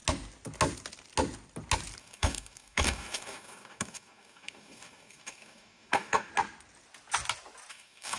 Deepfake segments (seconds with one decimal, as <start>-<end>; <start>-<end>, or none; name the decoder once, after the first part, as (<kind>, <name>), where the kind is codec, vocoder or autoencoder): 2.0-6.3 (codec, DAC); 7.7-8.2